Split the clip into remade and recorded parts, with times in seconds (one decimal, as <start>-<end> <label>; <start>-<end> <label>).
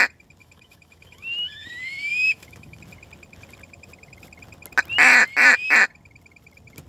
0.0-0.4 recorded; 0.4-2.8 remade; 2.8-6.9 recorded